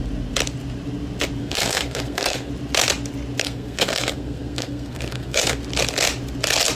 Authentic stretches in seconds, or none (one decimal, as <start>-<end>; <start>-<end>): 0.0-1.4; 2.5-3.4; 5.6-6.7